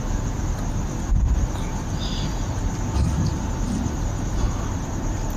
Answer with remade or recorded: recorded